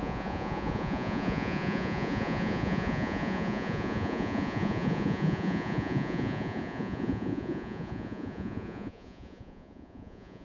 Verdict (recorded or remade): remade